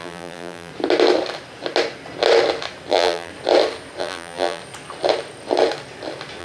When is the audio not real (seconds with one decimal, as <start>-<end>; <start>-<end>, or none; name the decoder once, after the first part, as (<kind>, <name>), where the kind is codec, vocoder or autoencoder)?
0.0-0.7 (vocoder, BigVGAN v2); 2.9-3.3; 4.0-4.6